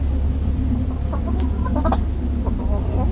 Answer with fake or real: real